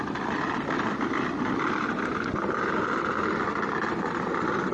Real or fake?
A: real